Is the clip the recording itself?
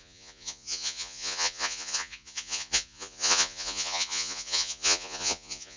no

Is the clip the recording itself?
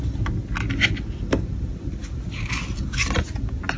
yes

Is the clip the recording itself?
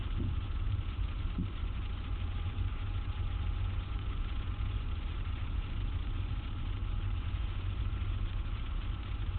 no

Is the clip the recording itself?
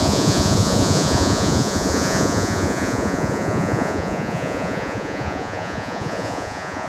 no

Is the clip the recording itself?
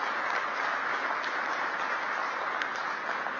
yes